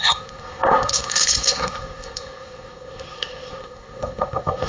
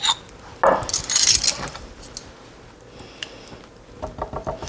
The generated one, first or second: first